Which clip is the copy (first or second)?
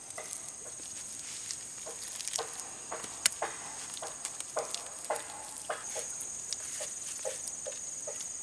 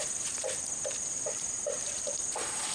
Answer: second